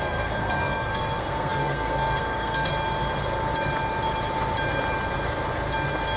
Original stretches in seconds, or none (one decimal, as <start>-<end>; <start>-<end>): 2.7-6.2